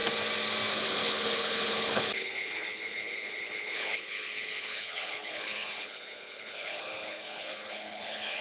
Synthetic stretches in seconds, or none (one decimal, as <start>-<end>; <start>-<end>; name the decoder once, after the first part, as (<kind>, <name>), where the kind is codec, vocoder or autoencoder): 0.7-8.4 (codec, HILCodec)